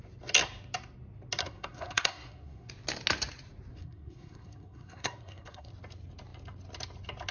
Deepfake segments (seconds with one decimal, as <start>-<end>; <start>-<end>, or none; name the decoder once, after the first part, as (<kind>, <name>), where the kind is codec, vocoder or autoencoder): 1.4-2.7 (codec, SNAC); 3.7-5.7